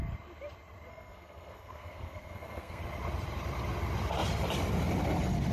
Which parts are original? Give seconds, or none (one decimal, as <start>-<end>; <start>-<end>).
0.0-0.9; 2.8-5.5